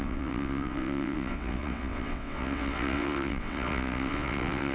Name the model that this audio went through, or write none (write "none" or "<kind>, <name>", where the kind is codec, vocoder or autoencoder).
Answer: vocoder, WaveNeXt